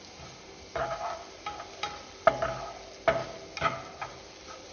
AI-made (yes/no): no